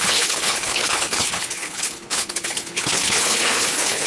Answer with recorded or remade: remade